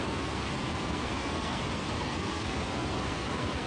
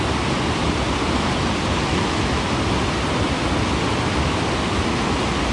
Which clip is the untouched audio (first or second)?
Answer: second